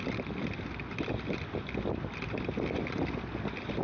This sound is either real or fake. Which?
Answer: real